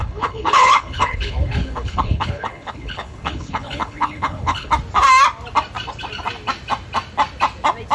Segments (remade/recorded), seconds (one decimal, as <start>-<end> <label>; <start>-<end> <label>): 0.0-4.7 remade; 4.7-7.9 recorded